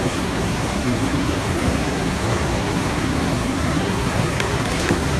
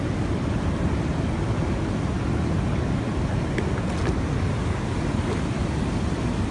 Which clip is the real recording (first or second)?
second